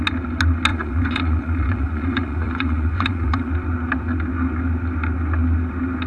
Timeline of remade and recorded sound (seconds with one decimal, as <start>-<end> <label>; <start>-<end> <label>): 0.0-0.7 recorded; 0.7-3.5 remade; 3.5-6.1 recorded